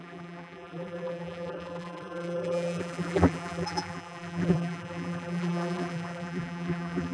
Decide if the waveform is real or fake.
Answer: fake